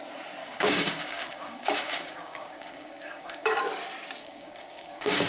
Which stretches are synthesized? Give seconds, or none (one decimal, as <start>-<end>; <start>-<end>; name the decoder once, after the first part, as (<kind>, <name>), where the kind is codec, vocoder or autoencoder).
0.4-3.6 (codec, DAC); 4.2-5.3